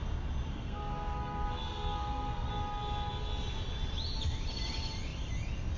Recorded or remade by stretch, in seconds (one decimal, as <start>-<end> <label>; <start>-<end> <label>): 0.0-0.5 recorded; 0.5-2.5 remade; 2.5-5.8 recorded